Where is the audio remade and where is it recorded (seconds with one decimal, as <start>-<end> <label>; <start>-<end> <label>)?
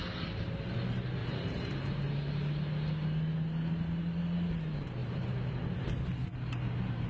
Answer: 0.0-1.2 recorded; 1.2-1.8 remade; 1.8-5.0 recorded; 5.0-5.6 remade; 5.6-7.1 recorded